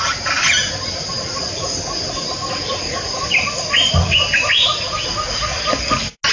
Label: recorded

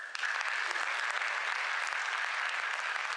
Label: recorded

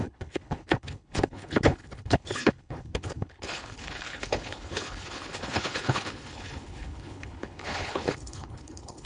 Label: remade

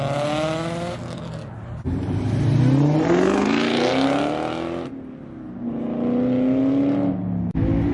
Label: recorded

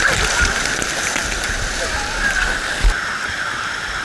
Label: recorded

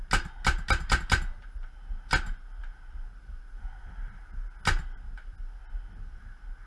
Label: recorded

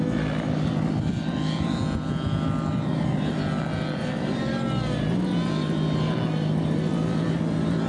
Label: recorded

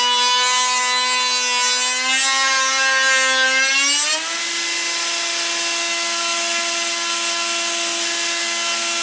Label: recorded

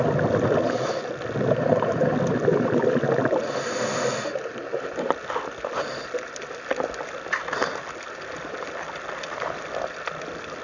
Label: recorded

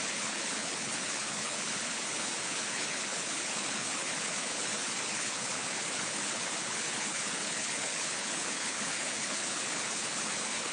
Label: remade